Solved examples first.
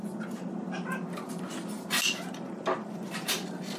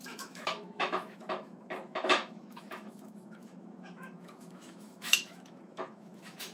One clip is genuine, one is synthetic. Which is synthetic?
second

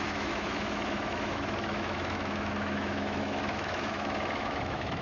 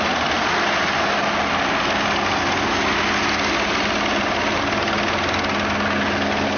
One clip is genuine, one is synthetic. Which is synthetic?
first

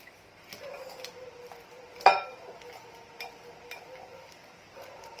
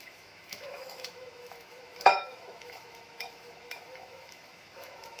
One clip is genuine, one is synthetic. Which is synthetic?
second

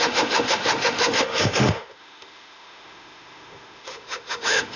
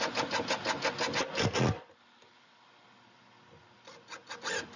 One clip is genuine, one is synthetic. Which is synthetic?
first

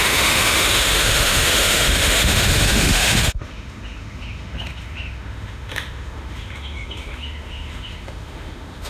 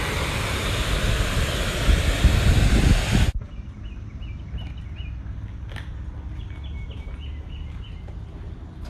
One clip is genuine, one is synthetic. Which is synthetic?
first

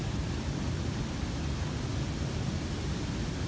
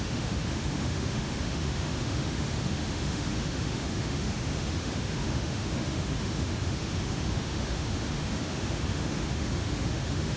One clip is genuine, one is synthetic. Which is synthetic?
second